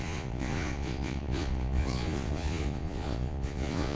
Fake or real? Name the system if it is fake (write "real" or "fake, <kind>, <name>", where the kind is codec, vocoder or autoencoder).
fake, vocoder, Vocos